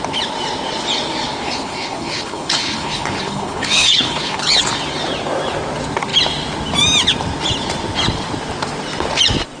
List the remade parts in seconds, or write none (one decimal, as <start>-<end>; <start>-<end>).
1.4-4.6